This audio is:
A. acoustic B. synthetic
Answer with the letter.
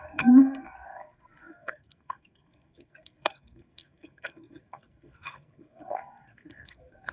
B